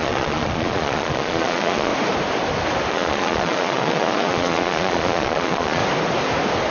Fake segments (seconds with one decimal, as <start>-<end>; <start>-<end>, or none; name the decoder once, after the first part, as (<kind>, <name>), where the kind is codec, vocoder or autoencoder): 0.0-1.9 (vocoder, Vocos); 2.9-5.8